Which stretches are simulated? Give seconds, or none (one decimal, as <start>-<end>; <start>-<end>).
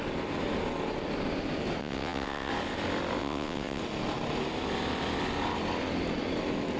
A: 1.8-2.5; 3.2-3.8